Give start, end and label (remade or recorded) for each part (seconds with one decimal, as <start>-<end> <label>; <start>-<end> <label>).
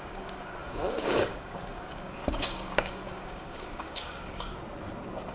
0.0-4.5 remade; 4.5-5.3 recorded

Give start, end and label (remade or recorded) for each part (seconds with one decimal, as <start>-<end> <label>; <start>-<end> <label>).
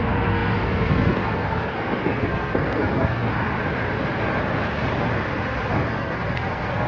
0.0-3.3 remade; 3.3-5.7 recorded; 5.7-6.9 remade